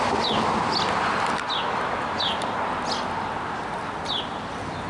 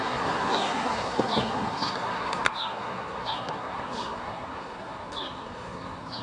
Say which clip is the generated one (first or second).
second